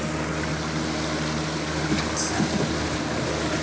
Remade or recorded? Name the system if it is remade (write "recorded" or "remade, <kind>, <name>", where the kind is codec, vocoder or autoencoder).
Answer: recorded